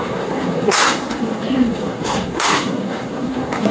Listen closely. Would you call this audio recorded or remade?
remade